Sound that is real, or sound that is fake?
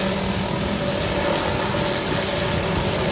real